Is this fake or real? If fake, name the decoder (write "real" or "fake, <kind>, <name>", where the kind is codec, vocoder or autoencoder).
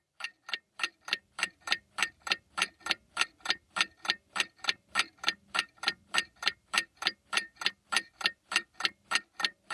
fake, vocoder, BigVGAN v2